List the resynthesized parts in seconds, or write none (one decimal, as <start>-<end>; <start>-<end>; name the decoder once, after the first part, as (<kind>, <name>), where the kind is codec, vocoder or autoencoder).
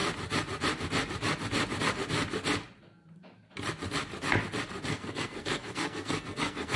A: 4.9-6.8 (codec, SNAC)